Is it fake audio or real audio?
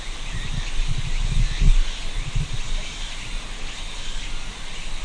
real